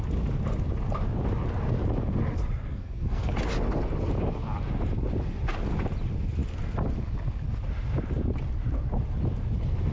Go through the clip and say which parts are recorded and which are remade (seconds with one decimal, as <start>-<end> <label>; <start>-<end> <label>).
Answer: 0.0-2.7 recorded; 2.7-3.3 remade; 3.3-9.9 recorded